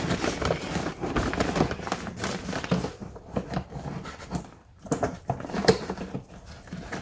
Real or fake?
fake